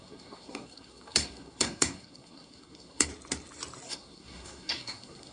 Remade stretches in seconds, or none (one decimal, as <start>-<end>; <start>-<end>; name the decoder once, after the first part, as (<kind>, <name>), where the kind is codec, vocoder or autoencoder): 0.0-3.1 (codec, SNAC); 3.9-5.3